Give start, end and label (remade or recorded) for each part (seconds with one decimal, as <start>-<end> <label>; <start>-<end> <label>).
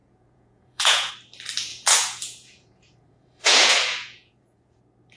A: 0.0-1.1 remade; 1.1-1.7 recorded; 1.7-4.8 remade; 4.8-5.2 recorded